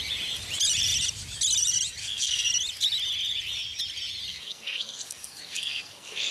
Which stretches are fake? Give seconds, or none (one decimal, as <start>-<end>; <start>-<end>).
2.0-2.5; 4.3-6.3